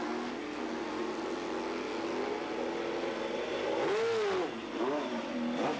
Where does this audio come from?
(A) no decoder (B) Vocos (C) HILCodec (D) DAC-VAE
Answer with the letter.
A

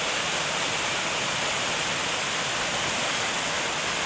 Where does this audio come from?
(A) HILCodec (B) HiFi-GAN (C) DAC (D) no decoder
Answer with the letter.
D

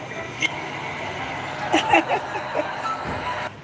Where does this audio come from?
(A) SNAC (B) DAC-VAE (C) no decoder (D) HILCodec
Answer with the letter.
C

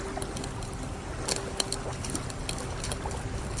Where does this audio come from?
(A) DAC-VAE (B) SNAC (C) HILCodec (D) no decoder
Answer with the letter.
D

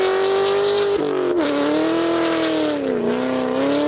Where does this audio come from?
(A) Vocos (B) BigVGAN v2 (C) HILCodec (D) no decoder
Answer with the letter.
D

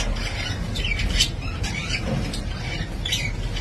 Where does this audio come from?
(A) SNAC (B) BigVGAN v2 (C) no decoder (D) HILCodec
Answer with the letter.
C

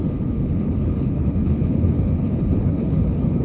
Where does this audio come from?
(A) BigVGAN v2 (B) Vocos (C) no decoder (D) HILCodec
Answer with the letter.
D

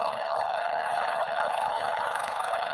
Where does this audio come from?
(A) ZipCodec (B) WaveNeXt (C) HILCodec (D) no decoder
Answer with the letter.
C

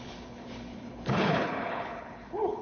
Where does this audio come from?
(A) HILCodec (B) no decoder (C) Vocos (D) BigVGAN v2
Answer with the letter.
A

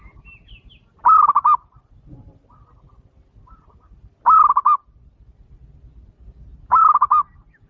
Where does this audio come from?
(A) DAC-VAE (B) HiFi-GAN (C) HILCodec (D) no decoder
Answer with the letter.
D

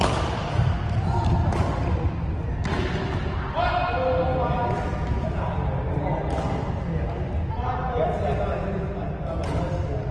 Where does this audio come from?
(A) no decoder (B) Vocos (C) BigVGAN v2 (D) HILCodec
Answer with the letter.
A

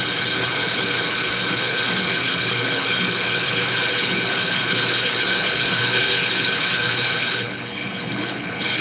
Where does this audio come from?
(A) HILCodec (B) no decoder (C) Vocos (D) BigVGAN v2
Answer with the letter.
A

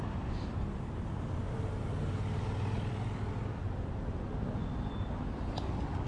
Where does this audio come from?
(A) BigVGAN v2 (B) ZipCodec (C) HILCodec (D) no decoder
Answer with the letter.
D